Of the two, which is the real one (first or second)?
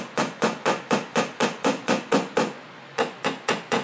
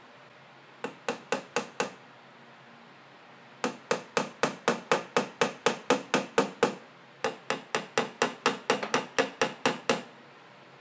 second